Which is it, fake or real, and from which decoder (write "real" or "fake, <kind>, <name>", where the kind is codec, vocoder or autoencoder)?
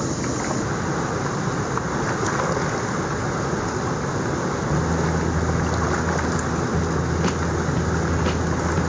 real